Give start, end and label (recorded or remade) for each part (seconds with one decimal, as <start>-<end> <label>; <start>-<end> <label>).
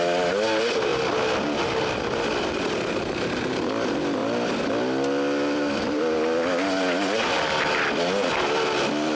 0.0-4.2 recorded; 4.2-6.0 remade; 6.0-9.1 recorded